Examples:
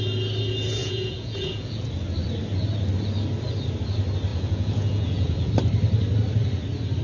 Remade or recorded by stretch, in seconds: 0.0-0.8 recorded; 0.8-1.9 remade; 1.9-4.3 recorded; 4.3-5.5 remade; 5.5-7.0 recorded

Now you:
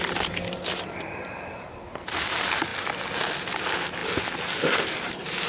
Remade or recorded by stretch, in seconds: 0.0-5.5 recorded